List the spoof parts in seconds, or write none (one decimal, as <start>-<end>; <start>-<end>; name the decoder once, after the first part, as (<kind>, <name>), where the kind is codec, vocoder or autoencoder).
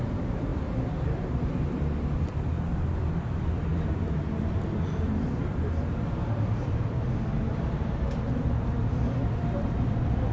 0.0-3.7 (vocoder, BigVGAN v2); 4.5-10.3